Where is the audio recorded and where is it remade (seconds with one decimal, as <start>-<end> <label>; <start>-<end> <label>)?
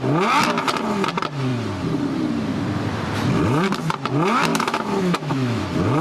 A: 0.0-4.5 recorded; 4.5-5.6 remade; 5.6-6.0 recorded